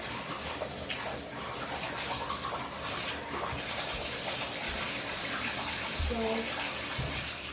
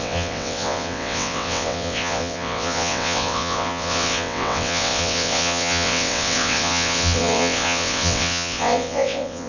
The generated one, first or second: second